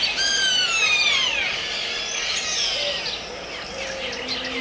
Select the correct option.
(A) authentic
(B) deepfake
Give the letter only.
A